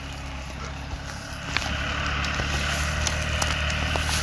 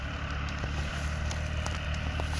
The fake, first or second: second